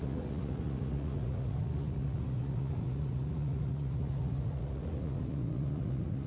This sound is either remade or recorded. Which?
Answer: remade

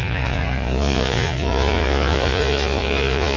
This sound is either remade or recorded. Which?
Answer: remade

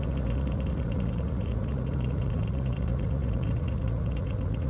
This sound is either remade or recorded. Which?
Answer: remade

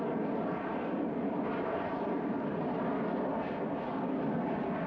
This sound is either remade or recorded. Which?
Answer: recorded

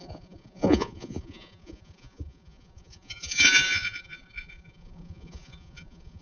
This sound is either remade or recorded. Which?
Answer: remade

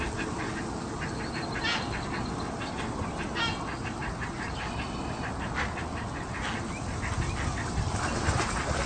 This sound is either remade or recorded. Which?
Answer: recorded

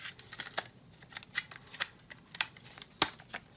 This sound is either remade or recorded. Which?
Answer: recorded